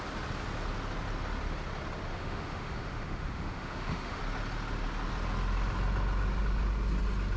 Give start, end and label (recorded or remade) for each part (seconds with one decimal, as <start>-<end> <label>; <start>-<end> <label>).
0.0-2.1 recorded; 2.1-4.2 remade; 4.2-7.4 recorded